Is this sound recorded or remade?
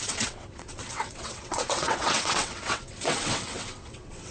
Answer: remade